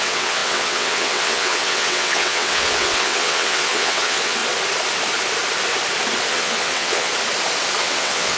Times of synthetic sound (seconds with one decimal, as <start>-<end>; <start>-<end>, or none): 0.0-4.4; 6.3-7.1; 7.8-8.4

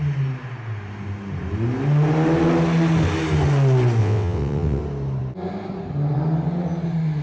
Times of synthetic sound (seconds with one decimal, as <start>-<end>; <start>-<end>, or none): 4.0-4.8

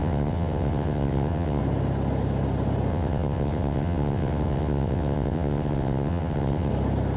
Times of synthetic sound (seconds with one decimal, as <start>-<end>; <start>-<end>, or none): 0.0-1.6; 2.9-6.7

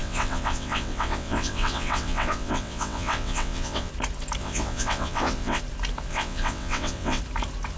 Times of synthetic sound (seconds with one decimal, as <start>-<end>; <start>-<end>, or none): 0.0-3.9; 4.4-5.6; 6.1-7.2